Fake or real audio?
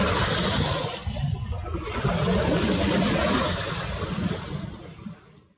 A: real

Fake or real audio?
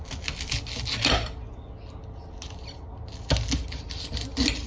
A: real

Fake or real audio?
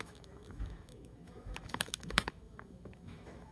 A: fake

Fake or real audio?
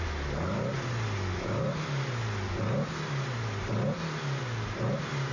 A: real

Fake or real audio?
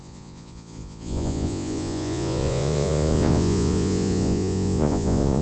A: fake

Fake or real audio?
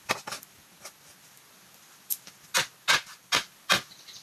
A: real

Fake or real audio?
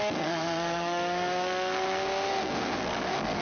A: fake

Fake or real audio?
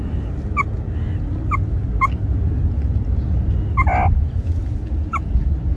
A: real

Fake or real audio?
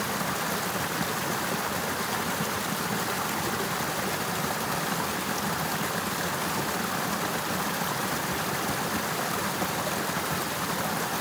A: real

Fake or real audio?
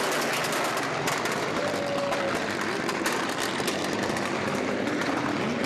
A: real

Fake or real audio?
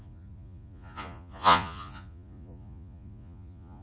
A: fake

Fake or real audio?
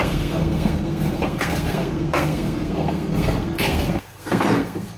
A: fake